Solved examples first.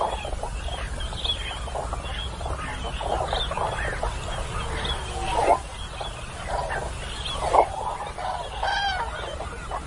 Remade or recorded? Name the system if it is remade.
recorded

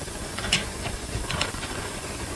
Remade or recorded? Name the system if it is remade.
remade, vocoder, Vocos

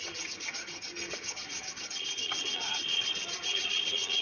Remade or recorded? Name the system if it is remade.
remade, vocoder, HiFi-GAN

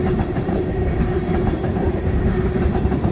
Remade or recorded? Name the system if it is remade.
remade, vocoder, BigVGAN v2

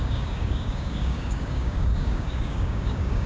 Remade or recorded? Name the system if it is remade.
remade, codec, DAC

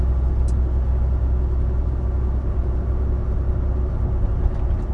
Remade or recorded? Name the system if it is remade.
recorded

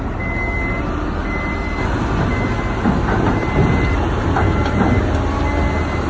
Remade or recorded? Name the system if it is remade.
recorded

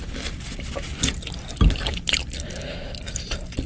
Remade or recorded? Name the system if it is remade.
recorded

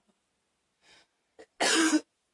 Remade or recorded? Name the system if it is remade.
recorded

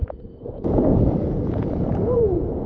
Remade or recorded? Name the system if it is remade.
remade, vocoder, Vocos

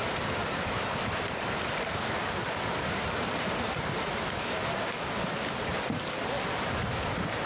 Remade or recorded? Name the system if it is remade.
remade, vocoder, BigVGAN v2